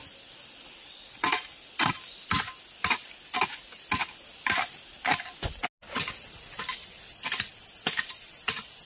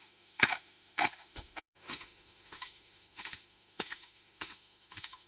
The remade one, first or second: second